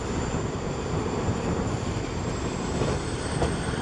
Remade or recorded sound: remade